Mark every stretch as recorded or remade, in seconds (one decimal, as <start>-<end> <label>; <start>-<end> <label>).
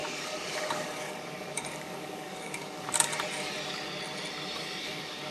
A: 0.0-3.1 remade; 3.1-4.8 recorded; 4.8-5.3 remade